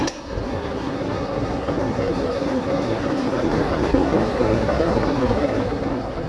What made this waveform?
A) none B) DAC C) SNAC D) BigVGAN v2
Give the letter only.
C